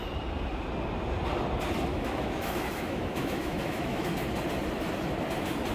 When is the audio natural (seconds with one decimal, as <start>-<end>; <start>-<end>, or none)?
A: 0.0-1.9; 4.1-5.7